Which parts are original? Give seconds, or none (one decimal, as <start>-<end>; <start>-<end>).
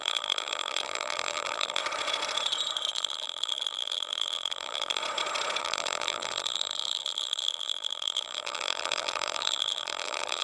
1.8-2.9; 5.0-5.6